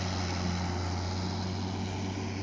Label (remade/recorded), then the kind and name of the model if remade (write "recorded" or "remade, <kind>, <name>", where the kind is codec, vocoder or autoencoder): recorded